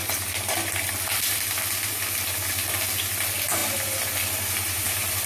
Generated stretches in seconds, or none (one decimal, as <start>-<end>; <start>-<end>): none

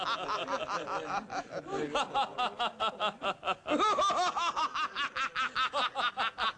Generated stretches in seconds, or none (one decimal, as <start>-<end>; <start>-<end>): none

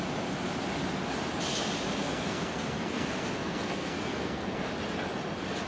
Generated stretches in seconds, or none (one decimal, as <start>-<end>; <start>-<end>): 2.0-4.7

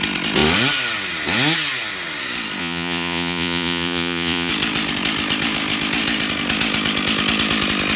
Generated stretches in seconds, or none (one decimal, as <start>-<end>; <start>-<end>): 2.6-4.5

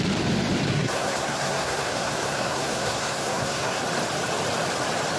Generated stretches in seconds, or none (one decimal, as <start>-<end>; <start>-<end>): 0.7-3.8